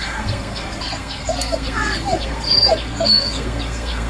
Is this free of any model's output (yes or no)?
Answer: no